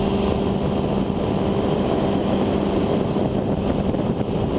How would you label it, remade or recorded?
recorded